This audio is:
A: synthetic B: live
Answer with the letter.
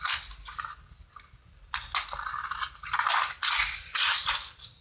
B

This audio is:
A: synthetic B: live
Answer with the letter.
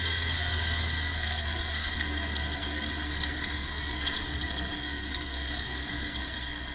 A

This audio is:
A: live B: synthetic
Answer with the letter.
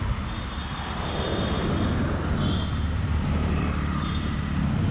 A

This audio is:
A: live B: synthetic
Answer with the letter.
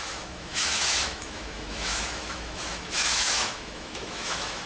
B